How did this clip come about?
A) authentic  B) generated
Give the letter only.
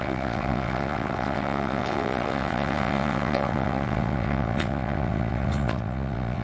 B